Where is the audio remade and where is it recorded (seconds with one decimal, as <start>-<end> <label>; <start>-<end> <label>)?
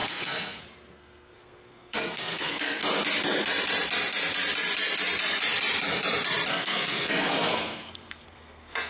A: 0.0-2.8 remade; 2.8-6.5 recorded; 6.5-8.9 remade